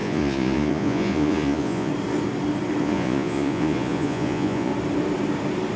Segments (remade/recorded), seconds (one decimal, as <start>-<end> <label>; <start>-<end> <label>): 0.0-1.9 remade; 1.9-2.8 recorded; 2.8-4.7 remade; 4.7-5.8 recorded